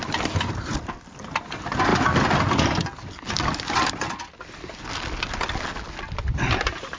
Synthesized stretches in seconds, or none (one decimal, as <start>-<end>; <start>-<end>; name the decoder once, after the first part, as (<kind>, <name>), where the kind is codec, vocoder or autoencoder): none